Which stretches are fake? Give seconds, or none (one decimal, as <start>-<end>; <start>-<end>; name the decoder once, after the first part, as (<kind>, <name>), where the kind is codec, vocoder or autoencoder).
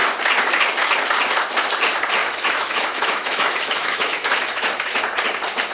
2.2-5.0 (autoencoder, DAC-VAE)